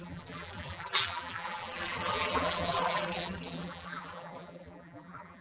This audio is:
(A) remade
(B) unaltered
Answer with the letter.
A